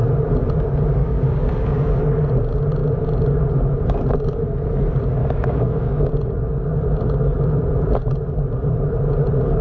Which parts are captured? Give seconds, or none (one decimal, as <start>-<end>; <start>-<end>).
0.0-1.0; 2.0-5.2; 6.1-9.6